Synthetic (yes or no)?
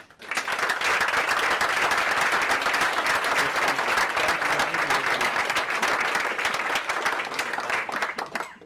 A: no